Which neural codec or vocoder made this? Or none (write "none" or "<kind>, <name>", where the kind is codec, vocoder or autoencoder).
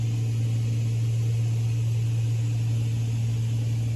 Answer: none